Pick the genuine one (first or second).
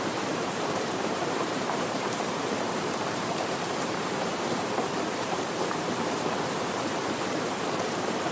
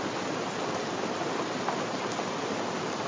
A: second